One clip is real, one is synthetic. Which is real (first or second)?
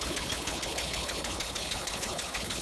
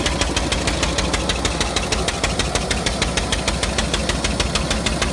second